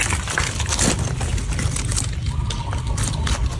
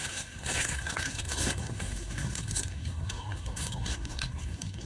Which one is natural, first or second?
first